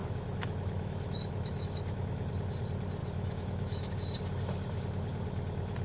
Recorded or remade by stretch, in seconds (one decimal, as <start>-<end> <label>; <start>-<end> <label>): 0.0-2.3 remade; 2.3-3.0 recorded; 3.0-3.9 remade; 3.9-5.8 recorded